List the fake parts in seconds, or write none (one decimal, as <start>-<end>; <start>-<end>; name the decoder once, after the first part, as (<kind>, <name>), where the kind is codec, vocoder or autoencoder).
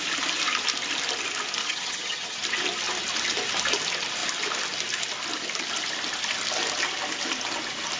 1.6-2.4 (vocoder, HiFi-GAN)